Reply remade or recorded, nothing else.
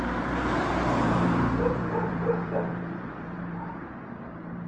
remade